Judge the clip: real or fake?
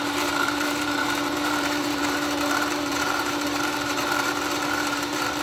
fake